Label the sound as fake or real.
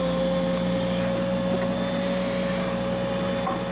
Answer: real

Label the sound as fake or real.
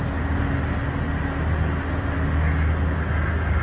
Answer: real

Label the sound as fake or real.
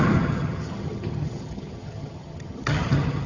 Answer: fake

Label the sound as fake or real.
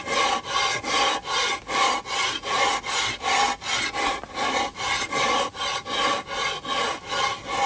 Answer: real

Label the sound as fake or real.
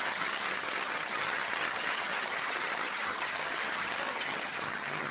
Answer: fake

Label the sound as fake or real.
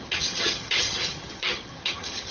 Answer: fake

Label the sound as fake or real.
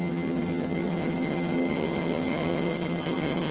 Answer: fake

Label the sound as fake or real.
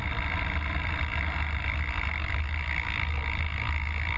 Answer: real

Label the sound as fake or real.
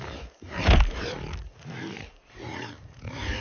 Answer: real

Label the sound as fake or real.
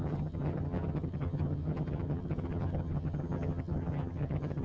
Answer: fake